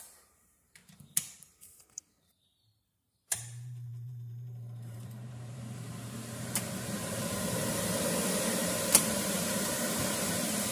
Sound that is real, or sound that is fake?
fake